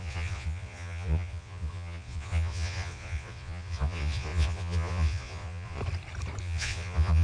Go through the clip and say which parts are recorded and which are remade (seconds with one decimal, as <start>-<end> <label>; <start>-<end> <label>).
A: 0.0-5.8 remade; 5.8-6.4 recorded; 6.4-7.2 remade